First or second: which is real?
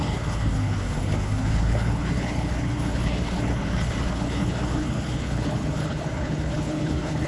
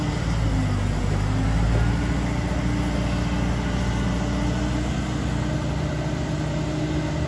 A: second